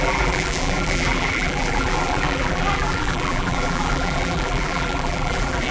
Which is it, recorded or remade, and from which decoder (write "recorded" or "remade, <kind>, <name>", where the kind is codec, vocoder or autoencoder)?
remade, vocoder, BigVGAN v2